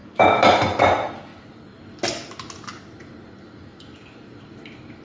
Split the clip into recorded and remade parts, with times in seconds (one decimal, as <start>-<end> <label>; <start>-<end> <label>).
0.0-0.8 remade; 0.8-5.0 recorded